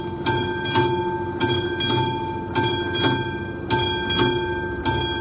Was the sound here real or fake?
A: real